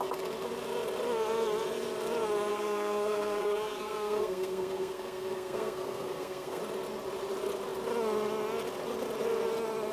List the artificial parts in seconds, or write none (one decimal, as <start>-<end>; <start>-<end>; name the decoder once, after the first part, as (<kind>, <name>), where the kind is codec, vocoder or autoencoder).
2.5-6.6 (codec, SNAC)